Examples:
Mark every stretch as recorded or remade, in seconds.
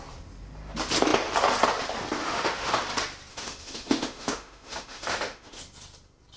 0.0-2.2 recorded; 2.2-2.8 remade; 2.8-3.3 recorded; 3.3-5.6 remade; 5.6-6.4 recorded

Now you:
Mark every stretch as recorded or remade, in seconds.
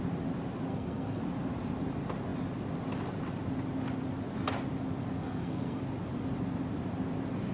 0.0-0.7 recorded; 0.7-1.2 remade; 1.2-5.2 recorded; 5.2-5.8 remade; 5.8-7.5 recorded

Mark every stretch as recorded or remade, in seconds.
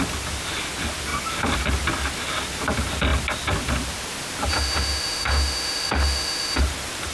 0.0-4.5 recorded; 4.5-6.6 remade; 6.6-7.1 recorded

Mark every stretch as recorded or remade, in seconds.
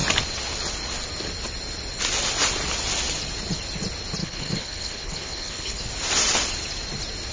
0.0-4.2 recorded; 4.2-5.9 remade; 5.9-7.3 recorded